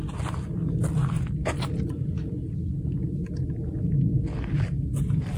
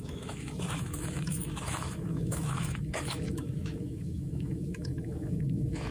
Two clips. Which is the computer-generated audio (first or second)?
second